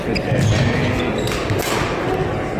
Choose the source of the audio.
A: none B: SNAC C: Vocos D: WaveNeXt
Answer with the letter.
A